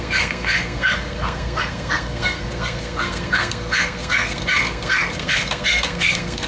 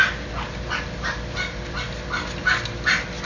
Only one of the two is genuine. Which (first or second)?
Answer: second